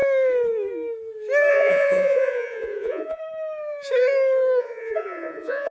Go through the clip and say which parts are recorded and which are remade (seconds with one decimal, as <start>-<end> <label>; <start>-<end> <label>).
0.0-1.5 recorded; 1.5-3.2 remade; 3.2-4.6 recorded; 4.6-5.7 remade